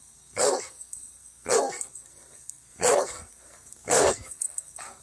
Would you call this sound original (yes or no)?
no